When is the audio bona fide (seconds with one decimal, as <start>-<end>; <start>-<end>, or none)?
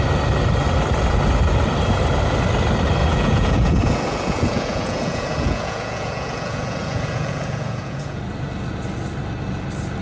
0.0-3.0; 8.2-10.0